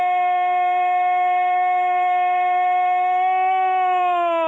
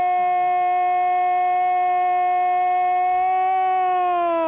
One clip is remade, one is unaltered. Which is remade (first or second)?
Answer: first